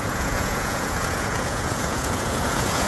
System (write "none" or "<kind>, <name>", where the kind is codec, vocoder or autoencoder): vocoder, Vocos